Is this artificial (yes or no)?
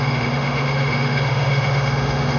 yes